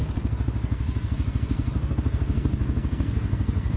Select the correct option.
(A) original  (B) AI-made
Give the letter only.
B